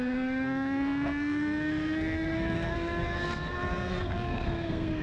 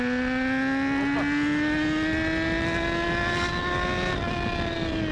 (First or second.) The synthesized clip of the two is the first